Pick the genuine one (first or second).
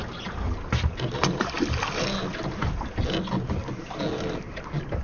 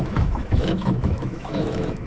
first